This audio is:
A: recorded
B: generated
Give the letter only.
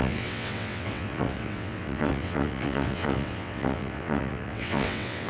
B